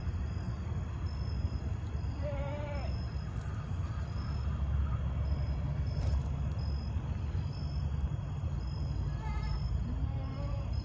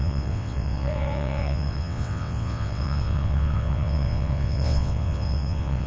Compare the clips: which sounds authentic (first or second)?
first